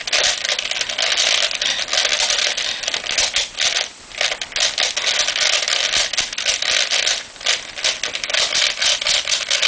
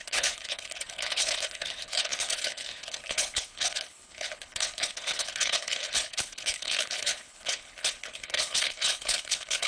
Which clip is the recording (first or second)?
first